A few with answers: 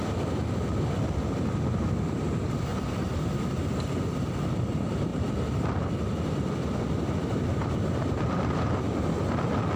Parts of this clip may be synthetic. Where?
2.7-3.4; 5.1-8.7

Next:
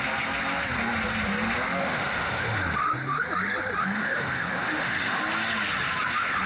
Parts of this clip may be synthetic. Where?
1.8-2.6; 3.8-5.2

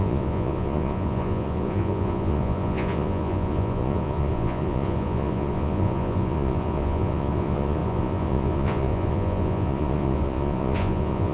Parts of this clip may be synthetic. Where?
0.0-11.3

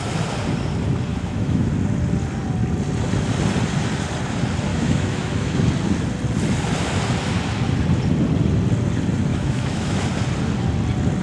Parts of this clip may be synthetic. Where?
1.1-1.7; 4.7-5.6; 9.3-10.0

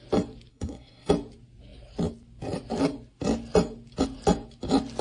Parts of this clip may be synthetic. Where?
0.5-1.1

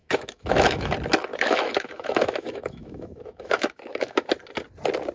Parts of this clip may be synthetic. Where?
0.0-0.9; 1.3-4.3

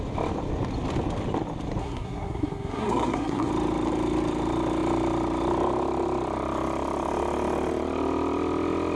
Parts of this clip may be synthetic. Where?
1.8-3.5

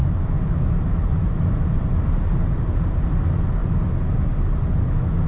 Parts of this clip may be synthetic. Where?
0.0-3.1